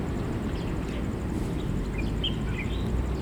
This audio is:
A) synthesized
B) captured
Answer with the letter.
B